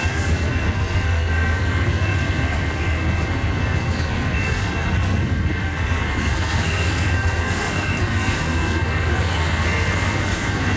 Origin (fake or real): fake